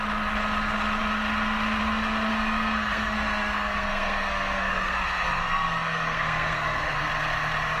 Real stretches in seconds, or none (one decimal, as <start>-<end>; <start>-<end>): 0.0-2.3; 7.0-7.8